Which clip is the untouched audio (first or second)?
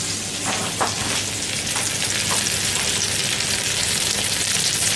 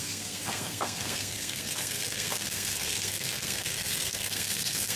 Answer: first